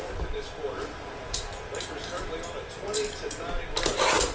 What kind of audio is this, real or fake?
real